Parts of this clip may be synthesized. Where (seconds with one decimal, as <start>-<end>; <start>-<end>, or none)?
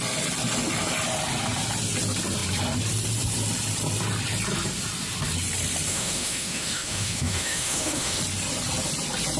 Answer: 5.9-8.2